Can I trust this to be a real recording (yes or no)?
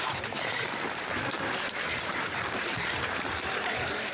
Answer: no